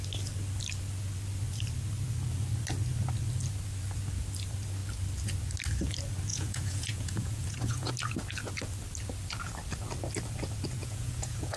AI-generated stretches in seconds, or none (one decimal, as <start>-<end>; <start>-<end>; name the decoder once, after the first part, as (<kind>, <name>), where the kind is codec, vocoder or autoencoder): 6.3-7.9 (vocoder, Vocos); 10.8-11.6